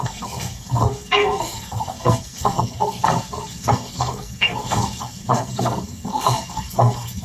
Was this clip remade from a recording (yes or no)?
yes